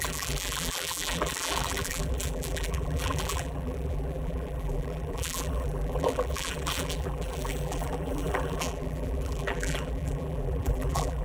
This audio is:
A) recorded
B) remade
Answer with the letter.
B